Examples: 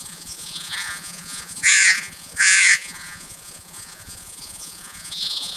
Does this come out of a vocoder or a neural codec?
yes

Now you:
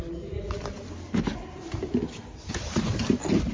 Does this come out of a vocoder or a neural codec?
no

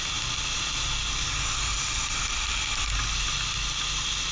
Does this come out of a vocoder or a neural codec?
no